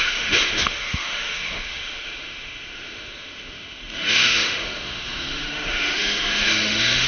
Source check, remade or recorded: remade